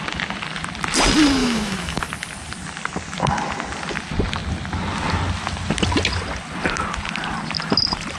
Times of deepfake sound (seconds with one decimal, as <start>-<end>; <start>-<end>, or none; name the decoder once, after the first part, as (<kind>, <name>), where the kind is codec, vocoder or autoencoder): 1.4-2.0 (autoencoder, DAC-VAE)